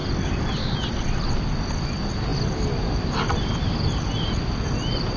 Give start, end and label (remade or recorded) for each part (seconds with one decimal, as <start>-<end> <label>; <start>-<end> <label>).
0.0-5.2 recorded